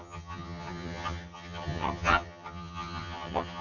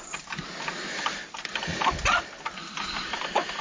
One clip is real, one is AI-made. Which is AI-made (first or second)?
first